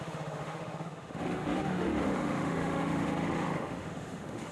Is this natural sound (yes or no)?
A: no